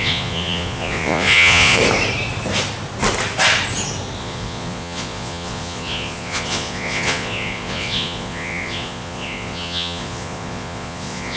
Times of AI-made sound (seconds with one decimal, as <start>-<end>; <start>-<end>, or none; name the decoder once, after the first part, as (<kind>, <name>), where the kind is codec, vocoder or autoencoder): 0.0-1.8 (vocoder, Vocos); 4.2-11.4